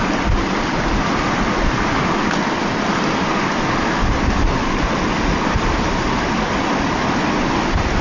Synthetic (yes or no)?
no